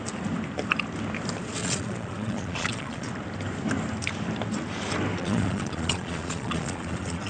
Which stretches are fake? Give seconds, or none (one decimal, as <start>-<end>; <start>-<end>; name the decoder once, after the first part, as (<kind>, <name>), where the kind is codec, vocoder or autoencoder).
1.6-3.1 (vocoder, Vocos); 5.2-7.3